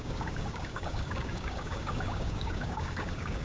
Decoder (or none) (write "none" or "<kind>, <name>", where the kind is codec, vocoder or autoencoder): codec, DAC